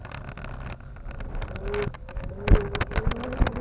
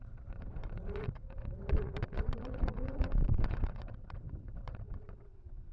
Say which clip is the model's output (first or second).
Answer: second